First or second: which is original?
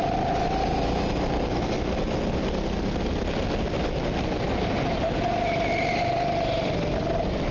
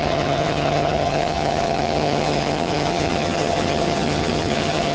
first